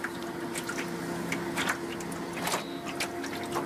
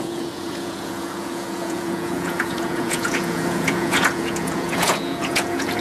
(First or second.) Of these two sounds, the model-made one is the second